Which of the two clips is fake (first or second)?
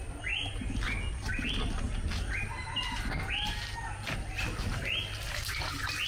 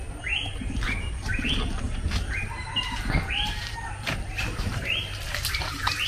second